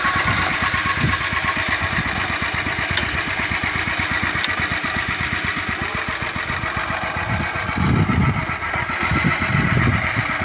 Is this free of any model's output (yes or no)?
yes